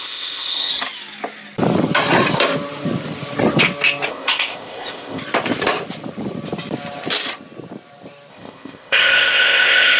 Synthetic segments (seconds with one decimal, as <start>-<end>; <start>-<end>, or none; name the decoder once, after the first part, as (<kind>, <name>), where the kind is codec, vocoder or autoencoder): 0.0-0.7 (codec, ZipCodec); 4.1-5.2; 8.3-10.0